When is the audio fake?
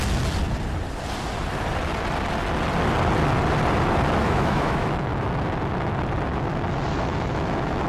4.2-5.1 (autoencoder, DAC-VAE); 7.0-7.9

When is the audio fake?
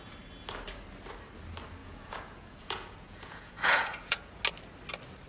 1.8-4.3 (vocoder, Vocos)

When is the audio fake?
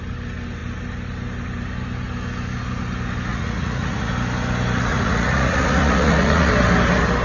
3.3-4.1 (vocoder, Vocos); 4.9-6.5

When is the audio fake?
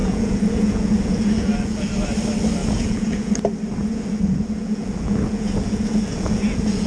0.0-1.9 (vocoder, Vocos); 2.6-3.3; 3.8-6.9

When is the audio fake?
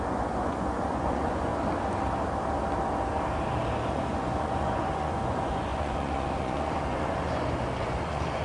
0.0-1.5 (vocoder, Vocos); 3.9-8.4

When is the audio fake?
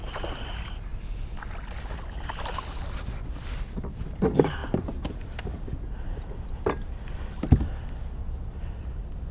none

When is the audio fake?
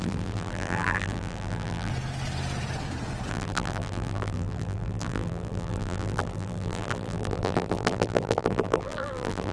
0.0-1.9 (vocoder, BigVGAN v2); 3.3-9.5